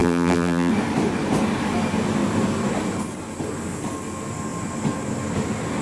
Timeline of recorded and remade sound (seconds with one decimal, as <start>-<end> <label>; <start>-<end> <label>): 0.0-0.7 remade; 0.7-5.8 recorded